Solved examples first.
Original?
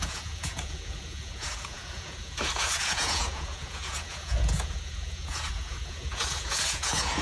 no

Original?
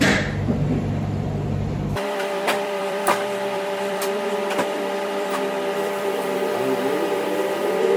no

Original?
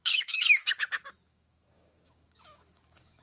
no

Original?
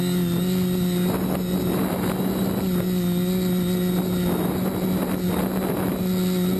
yes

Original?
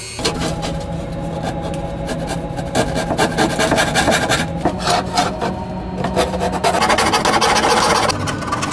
yes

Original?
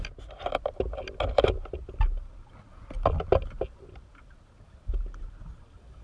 yes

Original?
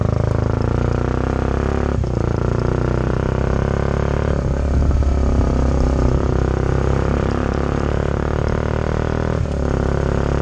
yes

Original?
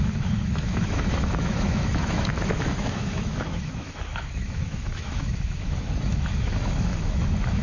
no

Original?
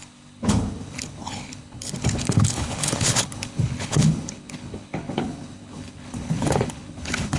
no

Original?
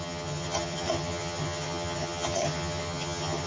no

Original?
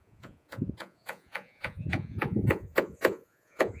no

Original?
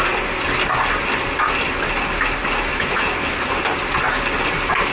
yes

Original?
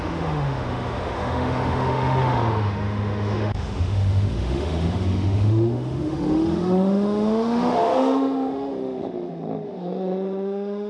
no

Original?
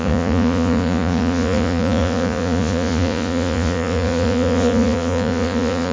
no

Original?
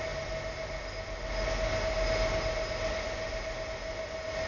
yes